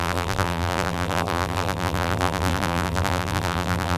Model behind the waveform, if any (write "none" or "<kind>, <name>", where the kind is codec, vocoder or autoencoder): vocoder, BigVGAN v2